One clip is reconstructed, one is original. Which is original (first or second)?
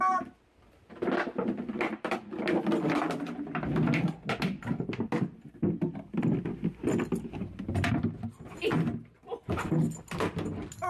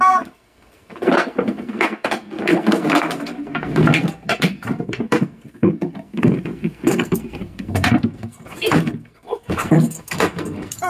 first